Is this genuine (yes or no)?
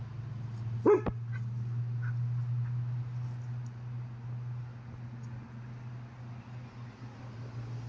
yes